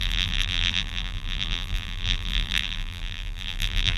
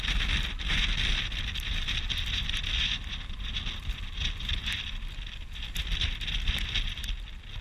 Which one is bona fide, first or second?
second